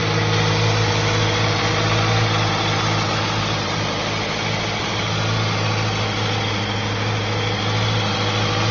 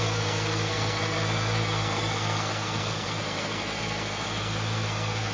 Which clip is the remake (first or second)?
second